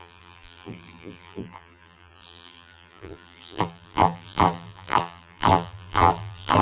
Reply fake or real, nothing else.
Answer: fake